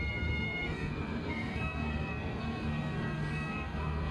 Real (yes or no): no